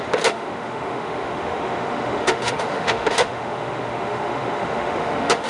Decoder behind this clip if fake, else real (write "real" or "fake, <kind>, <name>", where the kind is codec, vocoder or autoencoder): fake, autoencoder, DAC-VAE